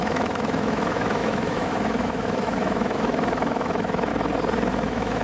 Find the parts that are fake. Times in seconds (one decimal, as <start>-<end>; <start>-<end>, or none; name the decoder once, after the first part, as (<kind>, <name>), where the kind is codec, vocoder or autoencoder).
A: 0.0-4.1 (autoencoder, DAC-VAE); 4.7-5.2